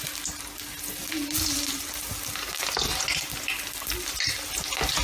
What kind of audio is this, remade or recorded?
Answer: recorded